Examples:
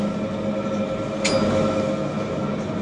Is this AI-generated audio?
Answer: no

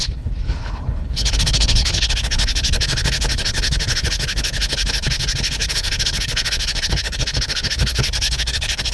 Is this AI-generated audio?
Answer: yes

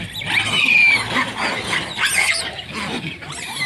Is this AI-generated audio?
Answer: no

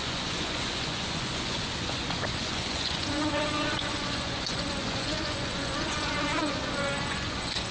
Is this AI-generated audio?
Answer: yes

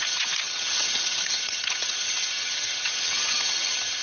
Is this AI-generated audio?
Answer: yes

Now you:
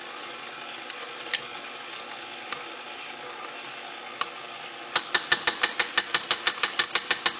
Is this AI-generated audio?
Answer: no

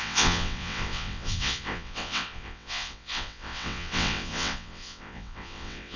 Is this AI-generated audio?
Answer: yes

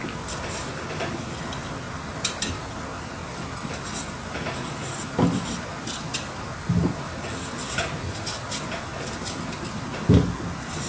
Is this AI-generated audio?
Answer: no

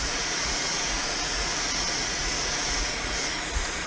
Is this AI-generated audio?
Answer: yes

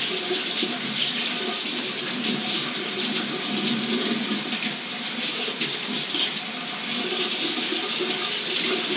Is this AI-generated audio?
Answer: no